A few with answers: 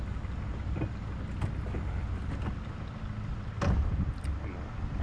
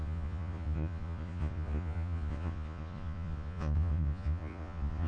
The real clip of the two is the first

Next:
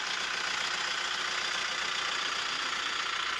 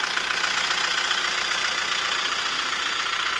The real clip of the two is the first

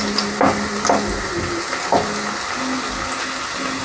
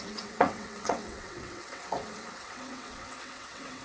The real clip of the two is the first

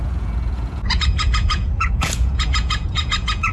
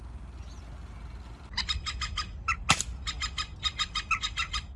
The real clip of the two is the second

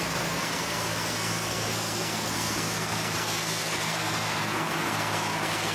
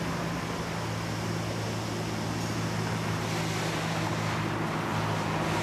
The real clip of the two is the second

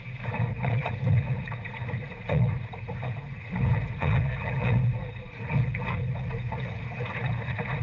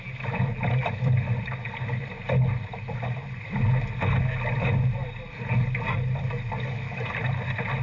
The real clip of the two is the second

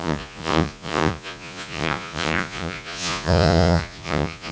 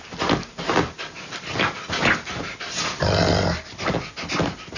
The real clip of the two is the second